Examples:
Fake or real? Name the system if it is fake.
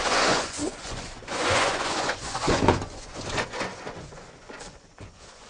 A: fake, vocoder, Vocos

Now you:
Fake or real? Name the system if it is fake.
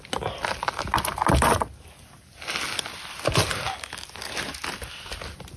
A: real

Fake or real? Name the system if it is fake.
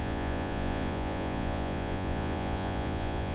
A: fake, vocoder, Vocos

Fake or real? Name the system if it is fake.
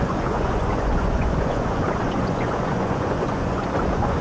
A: fake, vocoder, Vocos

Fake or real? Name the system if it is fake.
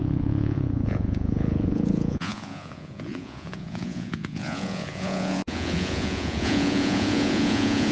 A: fake, vocoder, Vocos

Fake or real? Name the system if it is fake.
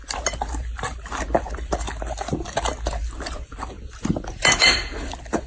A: real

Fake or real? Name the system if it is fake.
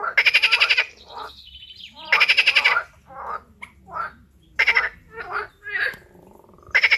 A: real